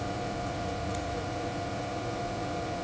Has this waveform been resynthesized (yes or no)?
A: yes